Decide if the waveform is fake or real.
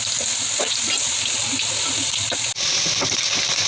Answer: real